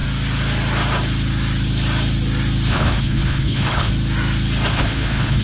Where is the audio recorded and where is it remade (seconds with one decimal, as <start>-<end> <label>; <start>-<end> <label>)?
0.0-2.7 recorded; 2.7-3.9 remade; 3.9-4.7 recorded; 4.7-5.4 remade